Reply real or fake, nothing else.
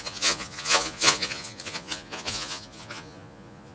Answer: fake